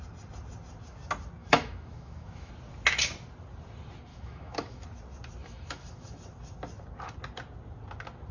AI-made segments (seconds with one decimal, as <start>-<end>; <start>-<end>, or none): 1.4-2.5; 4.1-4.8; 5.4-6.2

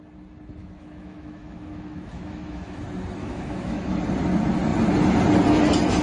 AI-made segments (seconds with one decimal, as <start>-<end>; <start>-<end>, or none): 0.6-2.8; 3.2-4.0

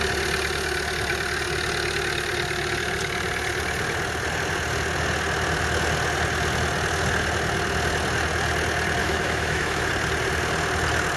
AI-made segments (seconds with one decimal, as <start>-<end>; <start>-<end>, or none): 9.0-9.9

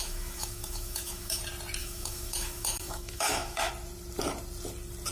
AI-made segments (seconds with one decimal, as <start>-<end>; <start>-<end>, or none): 0.0-1.4; 1.8-3.7

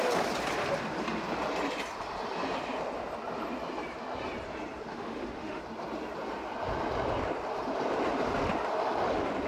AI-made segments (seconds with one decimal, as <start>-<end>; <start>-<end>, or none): 4.9-5.6

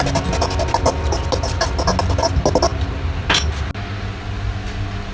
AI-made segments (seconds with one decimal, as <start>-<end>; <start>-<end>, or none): none

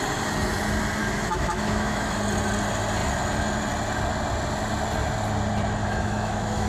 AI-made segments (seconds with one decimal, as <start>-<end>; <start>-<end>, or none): 1.0-2.2; 5.8-6.7